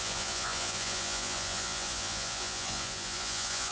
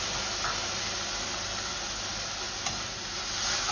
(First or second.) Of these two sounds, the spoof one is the first